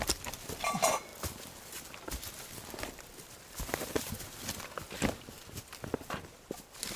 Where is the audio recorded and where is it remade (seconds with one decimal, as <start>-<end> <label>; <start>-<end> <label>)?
0.0-7.0 recorded